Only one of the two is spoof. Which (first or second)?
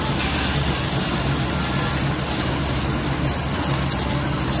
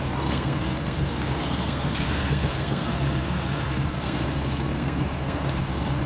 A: second